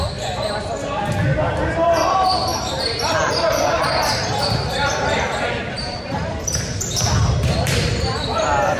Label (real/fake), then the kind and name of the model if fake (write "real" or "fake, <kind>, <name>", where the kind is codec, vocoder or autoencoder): fake, vocoder, BigVGAN v2